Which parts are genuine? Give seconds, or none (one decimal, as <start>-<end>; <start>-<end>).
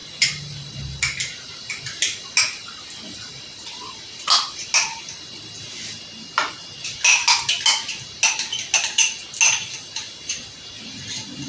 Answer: 0.0-11.5